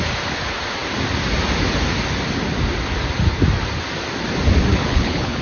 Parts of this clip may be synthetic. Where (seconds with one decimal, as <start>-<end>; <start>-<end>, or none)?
4.7-5.4